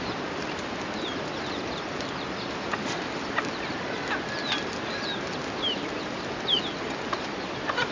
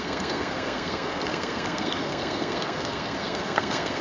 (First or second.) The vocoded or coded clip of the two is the second